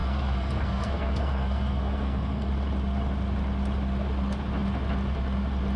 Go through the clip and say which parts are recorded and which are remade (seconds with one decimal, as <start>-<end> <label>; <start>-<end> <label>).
0.0-2.5 remade; 2.5-5.8 recorded

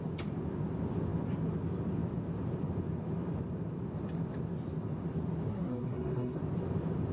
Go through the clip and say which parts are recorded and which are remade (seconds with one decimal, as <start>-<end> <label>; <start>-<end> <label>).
0.0-5.5 recorded; 5.5-6.4 remade; 6.4-7.1 recorded